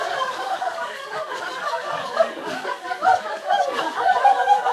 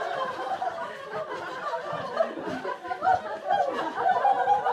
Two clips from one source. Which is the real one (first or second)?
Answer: second